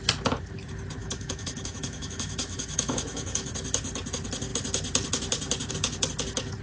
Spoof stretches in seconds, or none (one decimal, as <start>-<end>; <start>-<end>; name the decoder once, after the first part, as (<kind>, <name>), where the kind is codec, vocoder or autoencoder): 1.0-3.5 (autoencoder, DAC-VAE)